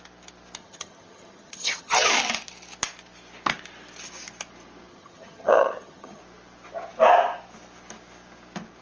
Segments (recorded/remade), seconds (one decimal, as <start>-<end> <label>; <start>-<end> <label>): 0.0-0.6 recorded; 0.6-2.1 remade; 2.1-4.9 recorded; 4.9-6.2 remade; 6.2-8.8 recorded